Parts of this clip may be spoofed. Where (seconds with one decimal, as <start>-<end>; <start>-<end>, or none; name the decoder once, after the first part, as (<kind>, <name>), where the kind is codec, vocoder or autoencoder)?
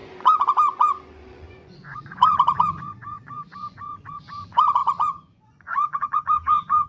0.0-6.9 (vocoder, Vocos)